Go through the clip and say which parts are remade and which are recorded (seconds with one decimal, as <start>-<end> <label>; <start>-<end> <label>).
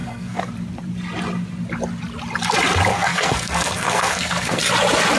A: 0.0-0.5 remade; 0.5-2.9 recorded; 2.9-4.6 remade; 4.6-5.2 recorded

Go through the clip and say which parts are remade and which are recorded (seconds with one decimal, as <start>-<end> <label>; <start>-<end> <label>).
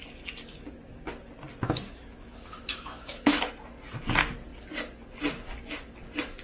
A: 0.0-1.6 recorded; 1.6-3.5 remade; 3.5-6.4 recorded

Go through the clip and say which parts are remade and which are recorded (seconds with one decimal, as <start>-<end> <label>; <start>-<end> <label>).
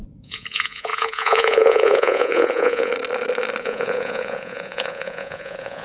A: 0.0-2.9 remade; 2.9-3.6 recorded; 3.6-5.8 remade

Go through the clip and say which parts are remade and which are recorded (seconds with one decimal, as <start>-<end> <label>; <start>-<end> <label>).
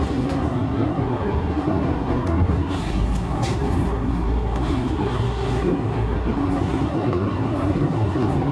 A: 0.0-8.5 remade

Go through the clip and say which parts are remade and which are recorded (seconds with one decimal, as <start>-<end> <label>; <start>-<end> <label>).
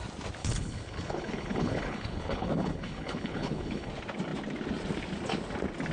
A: 0.0-0.4 recorded; 0.4-3.9 remade; 3.9-5.9 recorded